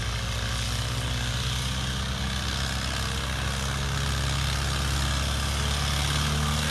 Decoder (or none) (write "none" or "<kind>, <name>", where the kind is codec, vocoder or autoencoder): none